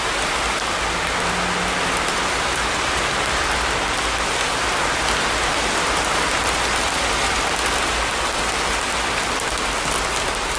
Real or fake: real